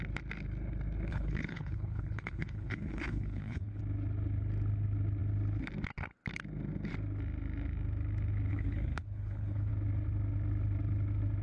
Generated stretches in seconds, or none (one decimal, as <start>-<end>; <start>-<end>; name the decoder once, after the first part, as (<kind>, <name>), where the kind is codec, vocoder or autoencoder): 1.1-3.8 (codec, HILCodec); 8.5-9.7